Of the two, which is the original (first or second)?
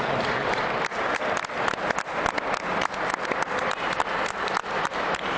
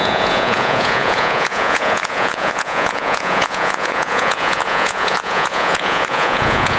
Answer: first